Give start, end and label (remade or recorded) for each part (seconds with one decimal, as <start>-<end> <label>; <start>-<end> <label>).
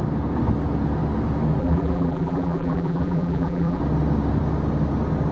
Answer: 0.0-1.6 recorded; 1.6-3.8 remade; 3.8-5.3 recorded